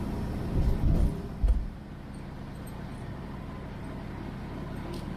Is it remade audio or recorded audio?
recorded